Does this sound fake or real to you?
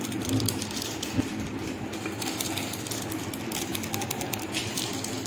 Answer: fake